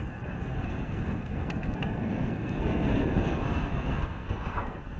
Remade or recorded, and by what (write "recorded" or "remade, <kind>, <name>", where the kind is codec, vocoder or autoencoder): remade, codec, SNAC